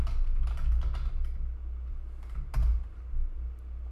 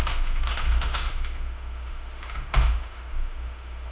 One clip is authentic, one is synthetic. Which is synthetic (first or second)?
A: second